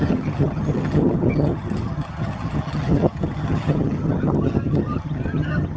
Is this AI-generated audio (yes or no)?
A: yes